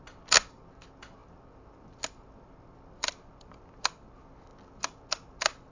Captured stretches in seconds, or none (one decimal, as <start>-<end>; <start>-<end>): 0.0-5.7